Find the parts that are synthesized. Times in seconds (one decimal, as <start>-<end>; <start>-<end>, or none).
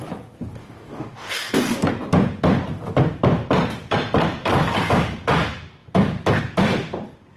0.6-1.6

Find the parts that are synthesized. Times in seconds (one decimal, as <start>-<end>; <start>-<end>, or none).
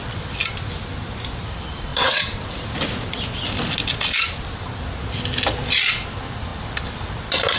1.9-2.5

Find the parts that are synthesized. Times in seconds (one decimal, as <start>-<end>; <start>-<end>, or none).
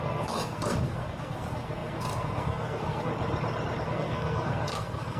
0.0-3.1; 3.8-5.2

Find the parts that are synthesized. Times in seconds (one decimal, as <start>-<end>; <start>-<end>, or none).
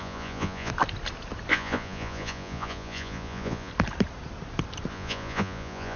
0.0-0.7; 1.5-3.7; 4.9-6.0